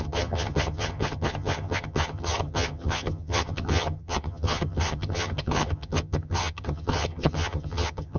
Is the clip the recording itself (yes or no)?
no